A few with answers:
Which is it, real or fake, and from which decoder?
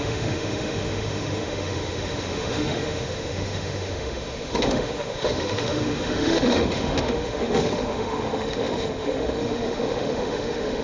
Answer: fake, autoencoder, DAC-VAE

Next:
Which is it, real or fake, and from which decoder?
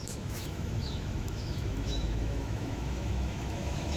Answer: fake, autoencoder, DAC-VAE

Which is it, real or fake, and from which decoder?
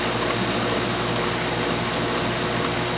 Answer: real